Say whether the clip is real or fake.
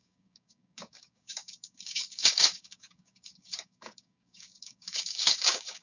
fake